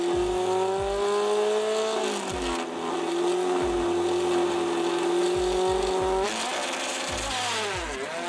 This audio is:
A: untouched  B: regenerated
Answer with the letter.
A